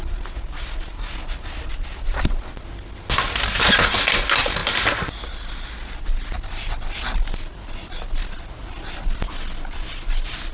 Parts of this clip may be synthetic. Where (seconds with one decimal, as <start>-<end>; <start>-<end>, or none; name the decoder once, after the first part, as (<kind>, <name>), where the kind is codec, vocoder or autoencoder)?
none